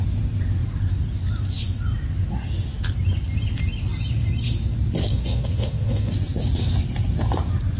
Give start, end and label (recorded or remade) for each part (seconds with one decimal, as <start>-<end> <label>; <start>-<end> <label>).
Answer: 0.0-5.1 recorded; 5.1-6.1 remade; 6.1-7.8 recorded